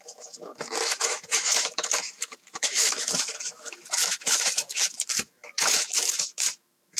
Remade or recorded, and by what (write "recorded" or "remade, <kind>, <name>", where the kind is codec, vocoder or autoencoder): remade, autoencoder, DAC-VAE